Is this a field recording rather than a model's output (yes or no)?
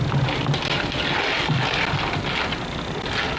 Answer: yes